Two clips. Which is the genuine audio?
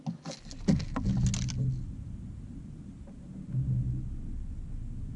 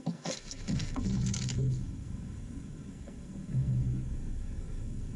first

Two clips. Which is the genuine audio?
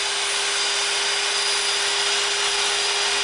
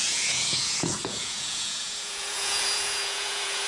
first